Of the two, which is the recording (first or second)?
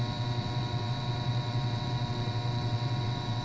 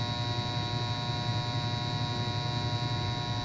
second